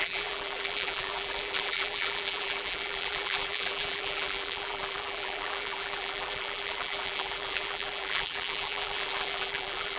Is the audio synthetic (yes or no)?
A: yes